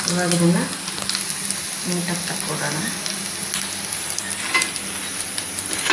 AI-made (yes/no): no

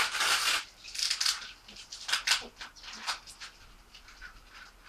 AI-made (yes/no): no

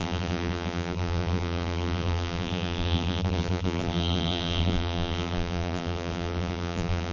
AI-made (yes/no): yes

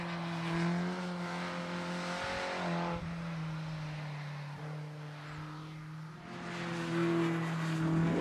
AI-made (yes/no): no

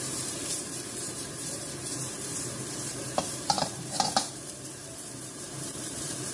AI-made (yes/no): yes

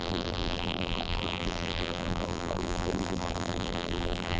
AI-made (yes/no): yes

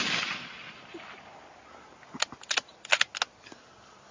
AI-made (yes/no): no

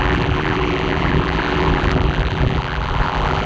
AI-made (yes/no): yes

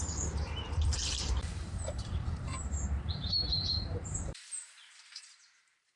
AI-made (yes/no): yes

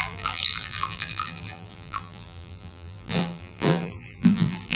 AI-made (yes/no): yes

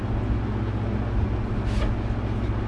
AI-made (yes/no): no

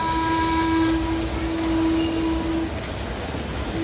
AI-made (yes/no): no